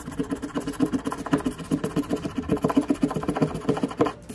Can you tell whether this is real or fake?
fake